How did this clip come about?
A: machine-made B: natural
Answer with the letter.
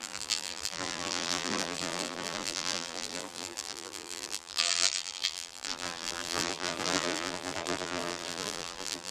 A